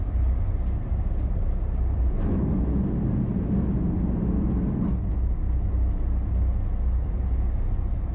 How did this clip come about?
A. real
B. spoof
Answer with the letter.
A